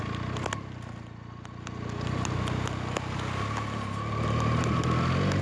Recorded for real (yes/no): yes